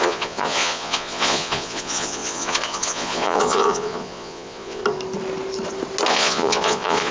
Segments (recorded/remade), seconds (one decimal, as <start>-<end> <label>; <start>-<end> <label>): 0.0-4.8 remade; 4.8-6.1 recorded; 6.1-7.1 remade